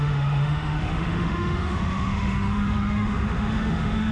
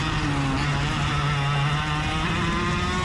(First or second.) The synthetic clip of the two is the first